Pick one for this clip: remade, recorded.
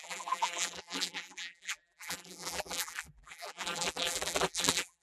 remade